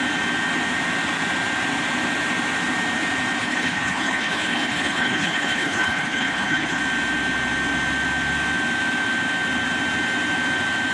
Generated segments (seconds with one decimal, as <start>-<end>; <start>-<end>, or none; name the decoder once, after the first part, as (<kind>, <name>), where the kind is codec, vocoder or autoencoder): 3.4-6.8 (codec, HILCodec)